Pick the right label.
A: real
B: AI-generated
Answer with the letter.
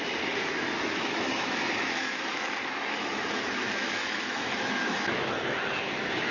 B